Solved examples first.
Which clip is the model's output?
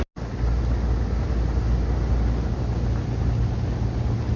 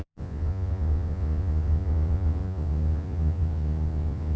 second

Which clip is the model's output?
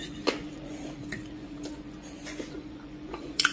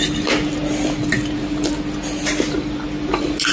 first